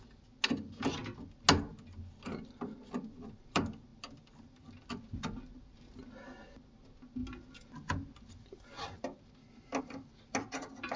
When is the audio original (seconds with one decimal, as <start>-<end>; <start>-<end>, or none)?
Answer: 0.0-11.0